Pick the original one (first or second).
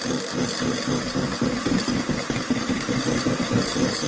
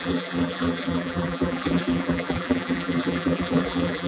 first